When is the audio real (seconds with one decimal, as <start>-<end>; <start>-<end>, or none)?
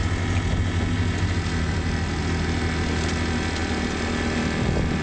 0.0-5.0